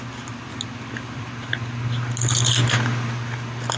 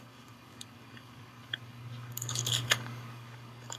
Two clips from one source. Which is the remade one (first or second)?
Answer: second